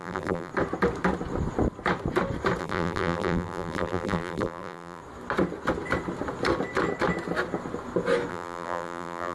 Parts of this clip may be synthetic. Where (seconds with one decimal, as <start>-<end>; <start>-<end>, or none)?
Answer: 0.0-0.5; 2.6-5.0; 8.3-9.3